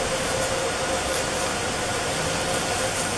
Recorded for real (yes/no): yes